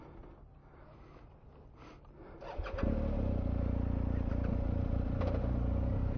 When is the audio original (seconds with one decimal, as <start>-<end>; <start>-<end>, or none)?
0.0-6.2